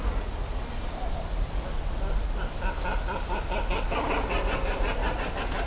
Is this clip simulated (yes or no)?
no